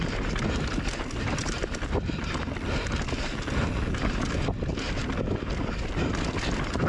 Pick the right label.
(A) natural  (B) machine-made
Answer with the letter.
A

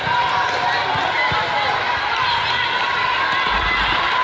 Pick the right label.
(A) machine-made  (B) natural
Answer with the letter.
B